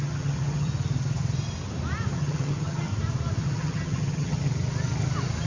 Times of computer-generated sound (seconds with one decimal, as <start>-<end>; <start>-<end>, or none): 0.0-0.7; 2.1-2.9; 3.4-4.5